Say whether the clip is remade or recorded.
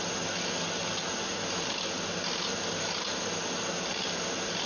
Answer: recorded